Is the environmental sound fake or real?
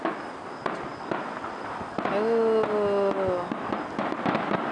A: real